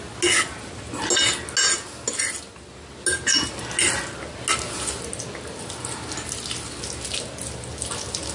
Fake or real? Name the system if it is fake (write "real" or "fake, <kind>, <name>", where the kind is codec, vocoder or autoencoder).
real